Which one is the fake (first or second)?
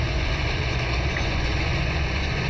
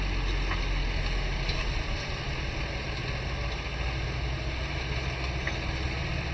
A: first